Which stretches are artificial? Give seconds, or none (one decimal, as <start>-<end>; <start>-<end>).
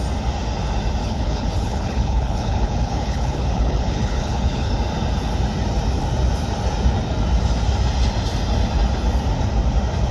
1.0-4.7